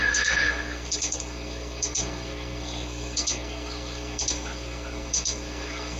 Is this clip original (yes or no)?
no